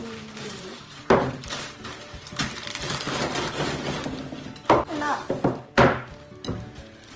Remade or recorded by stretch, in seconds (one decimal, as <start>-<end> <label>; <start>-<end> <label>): 0.0-0.4 recorded; 0.4-3.5 remade; 3.5-7.2 recorded